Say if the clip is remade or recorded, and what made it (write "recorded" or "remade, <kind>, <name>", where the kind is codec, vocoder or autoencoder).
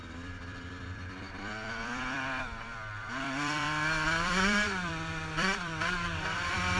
remade, vocoder, BigVGAN v2